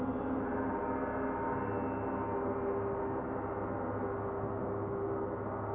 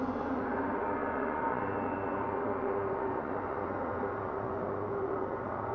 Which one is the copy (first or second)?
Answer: second